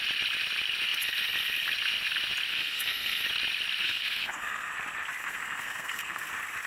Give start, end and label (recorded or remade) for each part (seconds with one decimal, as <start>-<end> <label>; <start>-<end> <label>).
0.0-2.5 recorded; 2.5-3.2 remade; 3.2-3.8 recorded; 3.8-4.7 remade; 4.7-5.2 recorded; 5.2-6.3 remade; 6.3-6.7 recorded